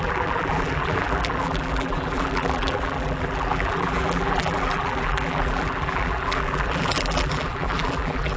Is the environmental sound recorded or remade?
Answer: remade